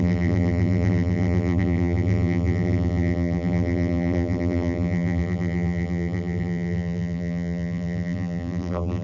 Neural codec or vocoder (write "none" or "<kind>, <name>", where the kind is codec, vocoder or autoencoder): vocoder, BigVGAN v2